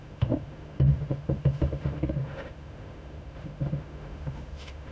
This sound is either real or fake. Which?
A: fake